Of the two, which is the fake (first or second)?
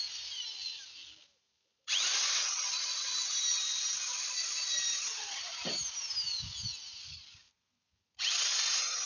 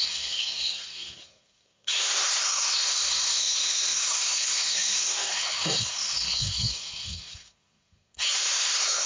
second